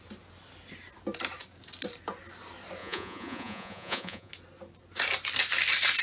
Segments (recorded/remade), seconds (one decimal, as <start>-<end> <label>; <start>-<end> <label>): 0.0-2.8 recorded; 2.8-4.3 remade; 4.3-6.0 recorded